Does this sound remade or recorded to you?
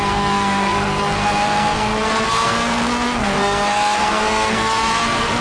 remade